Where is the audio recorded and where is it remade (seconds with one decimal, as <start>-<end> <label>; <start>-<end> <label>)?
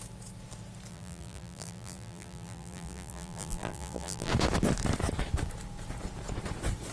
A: 0.0-0.9 recorded; 0.9-4.3 remade; 4.3-6.9 recorded